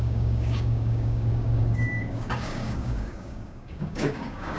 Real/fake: fake